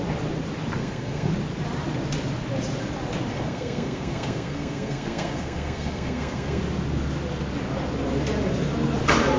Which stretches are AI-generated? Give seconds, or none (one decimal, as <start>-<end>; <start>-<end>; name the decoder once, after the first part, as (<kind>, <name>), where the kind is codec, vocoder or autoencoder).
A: 0.8-1.3 (codec, SNAC); 3.3-6.6